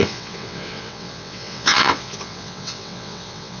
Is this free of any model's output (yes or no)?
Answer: no